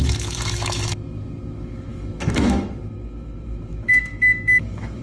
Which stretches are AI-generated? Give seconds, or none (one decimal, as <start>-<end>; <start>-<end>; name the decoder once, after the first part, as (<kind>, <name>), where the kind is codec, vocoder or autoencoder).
0.0-5.0 (autoencoder, DAC-VAE)